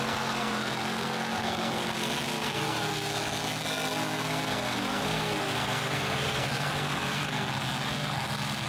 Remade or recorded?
remade